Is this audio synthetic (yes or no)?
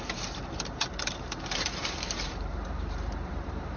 yes